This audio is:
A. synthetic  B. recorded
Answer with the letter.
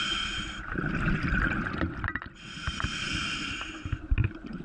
B